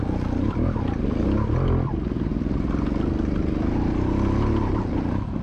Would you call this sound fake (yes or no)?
no